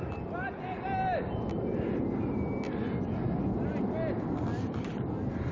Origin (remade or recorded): recorded